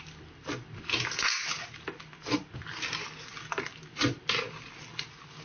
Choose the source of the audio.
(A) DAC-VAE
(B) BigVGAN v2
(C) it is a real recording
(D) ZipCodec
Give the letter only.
C